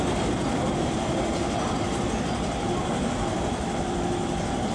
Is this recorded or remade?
recorded